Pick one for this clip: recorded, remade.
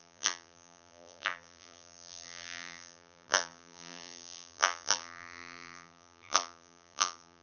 remade